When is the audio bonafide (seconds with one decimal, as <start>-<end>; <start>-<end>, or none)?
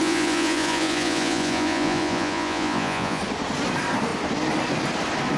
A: 3.2-5.4